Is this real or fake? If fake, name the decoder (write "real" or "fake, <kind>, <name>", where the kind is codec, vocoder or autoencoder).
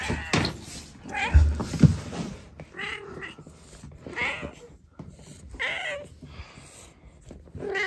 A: real